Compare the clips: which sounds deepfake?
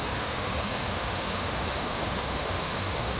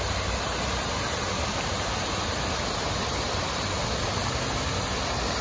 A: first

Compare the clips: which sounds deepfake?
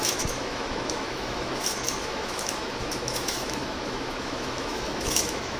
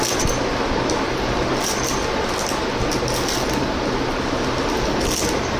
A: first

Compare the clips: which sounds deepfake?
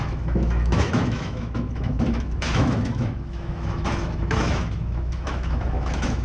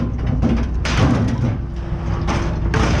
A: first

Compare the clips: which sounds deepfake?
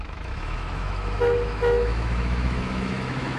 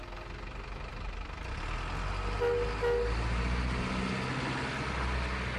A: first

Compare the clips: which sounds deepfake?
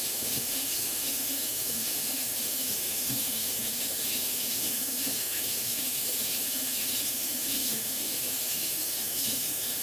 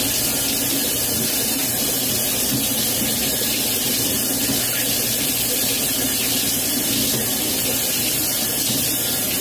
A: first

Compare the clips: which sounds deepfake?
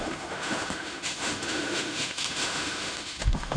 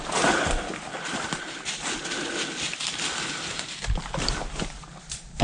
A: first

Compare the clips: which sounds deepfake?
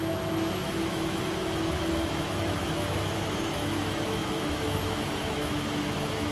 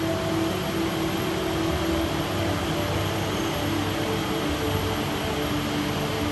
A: first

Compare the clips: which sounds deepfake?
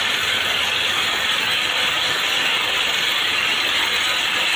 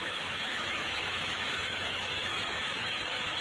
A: second